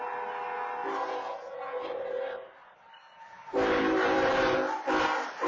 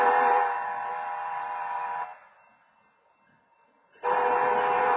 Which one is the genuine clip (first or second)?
first